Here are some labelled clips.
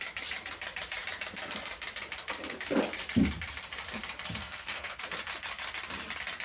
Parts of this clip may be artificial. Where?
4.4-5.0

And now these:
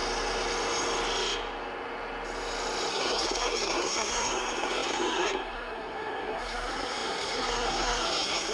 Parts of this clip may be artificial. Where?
2.9-8.5

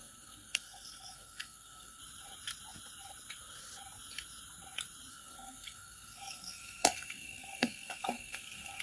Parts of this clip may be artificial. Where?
0.0-2.0; 5.1-8.8

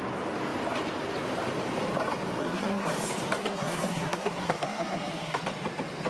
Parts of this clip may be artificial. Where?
2.4-2.9; 3.4-5.4

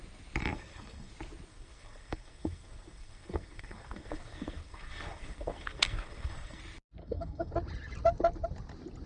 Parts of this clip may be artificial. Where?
0.4-1.1; 1.5-6.6; 7.0-7.5